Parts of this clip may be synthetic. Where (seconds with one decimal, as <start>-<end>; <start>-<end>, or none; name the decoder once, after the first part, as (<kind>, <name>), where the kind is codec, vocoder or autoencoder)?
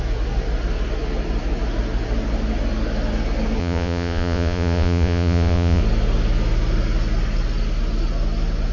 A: 3.6-5.8 (vocoder, Vocos)